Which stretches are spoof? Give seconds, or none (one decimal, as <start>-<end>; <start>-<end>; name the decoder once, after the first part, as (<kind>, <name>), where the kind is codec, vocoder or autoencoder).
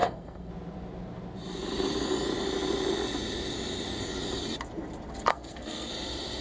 0.0-0.5 (codec, SNAC); 5.3-5.9